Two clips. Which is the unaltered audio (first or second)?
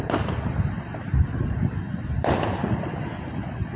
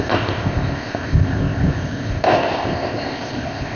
first